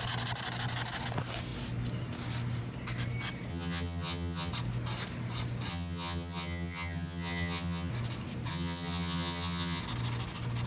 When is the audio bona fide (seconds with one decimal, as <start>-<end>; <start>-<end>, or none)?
0.0-3.5; 4.5-5.7; 7.9-8.5; 9.8-10.7